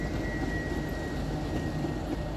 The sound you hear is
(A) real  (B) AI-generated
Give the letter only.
A